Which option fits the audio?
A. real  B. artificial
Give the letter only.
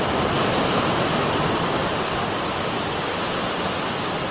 A